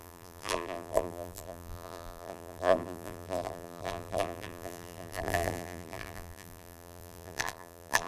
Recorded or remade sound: remade